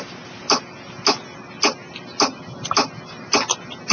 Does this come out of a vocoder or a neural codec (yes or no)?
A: no